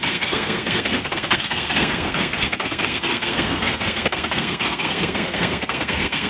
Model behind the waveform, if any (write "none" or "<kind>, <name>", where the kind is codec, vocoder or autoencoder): codec, SNAC